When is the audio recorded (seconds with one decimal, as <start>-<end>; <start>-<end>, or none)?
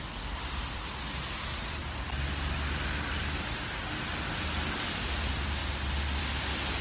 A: 0.0-6.8